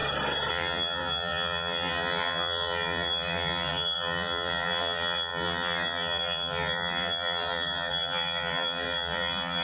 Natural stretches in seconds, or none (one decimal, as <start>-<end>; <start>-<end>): 0.0-0.5